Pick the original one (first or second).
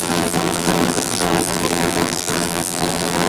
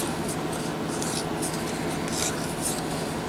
second